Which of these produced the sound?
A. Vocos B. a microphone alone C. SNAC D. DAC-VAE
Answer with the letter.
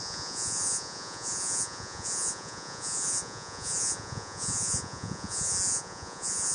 A